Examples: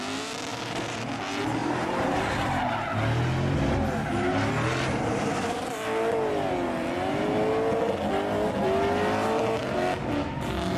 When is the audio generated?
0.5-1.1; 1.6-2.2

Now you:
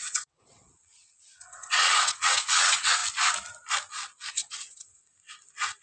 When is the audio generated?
0.0-3.0; 4.3-5.1

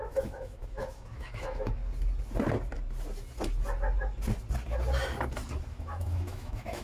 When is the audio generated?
0.0-1.8; 5.7-6.8

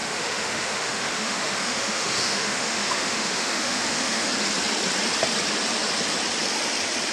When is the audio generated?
0.0-4.3

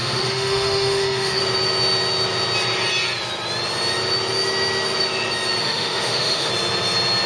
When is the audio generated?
0.0-1.4; 5.6-6.5

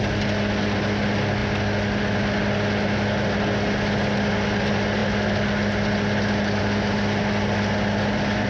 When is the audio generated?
none